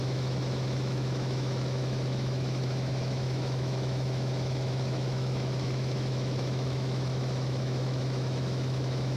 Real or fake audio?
fake